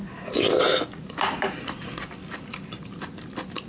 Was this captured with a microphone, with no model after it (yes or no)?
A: yes